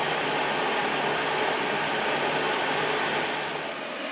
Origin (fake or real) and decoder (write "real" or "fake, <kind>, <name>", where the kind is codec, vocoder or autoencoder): real